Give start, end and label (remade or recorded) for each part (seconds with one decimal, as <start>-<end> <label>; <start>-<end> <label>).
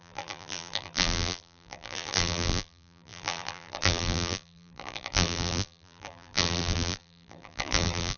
0.0-8.2 remade